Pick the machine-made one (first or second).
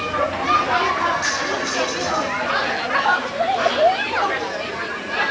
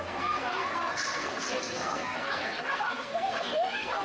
second